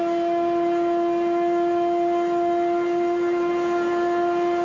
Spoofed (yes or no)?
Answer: no